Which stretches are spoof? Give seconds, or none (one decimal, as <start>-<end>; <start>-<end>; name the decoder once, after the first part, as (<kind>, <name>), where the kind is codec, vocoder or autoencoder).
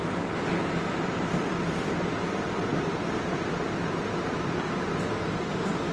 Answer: none